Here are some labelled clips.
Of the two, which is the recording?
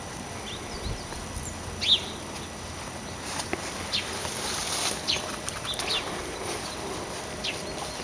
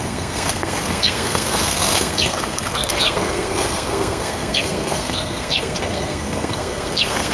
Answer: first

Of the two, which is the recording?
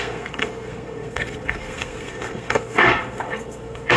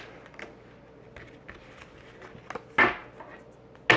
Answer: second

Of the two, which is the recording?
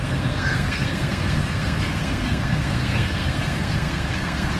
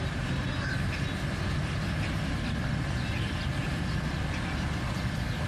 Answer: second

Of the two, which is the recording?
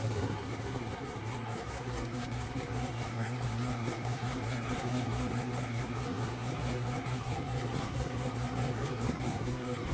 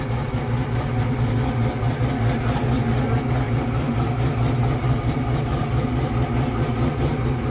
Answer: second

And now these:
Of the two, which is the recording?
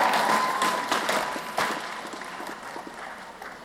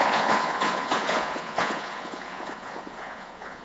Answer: first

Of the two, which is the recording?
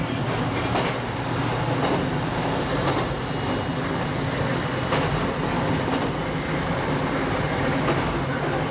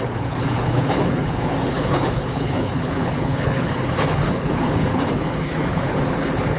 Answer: first